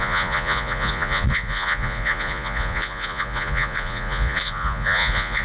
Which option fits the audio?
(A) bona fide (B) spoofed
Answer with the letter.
B